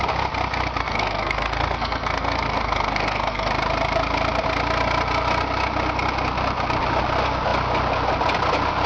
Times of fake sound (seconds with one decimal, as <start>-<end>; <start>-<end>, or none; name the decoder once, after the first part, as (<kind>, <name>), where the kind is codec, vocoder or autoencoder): 0.8-3.5 (codec, SNAC)